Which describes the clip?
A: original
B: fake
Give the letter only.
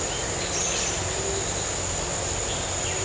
A